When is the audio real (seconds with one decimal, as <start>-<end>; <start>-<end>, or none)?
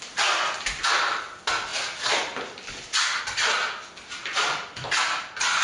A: 0.0-5.6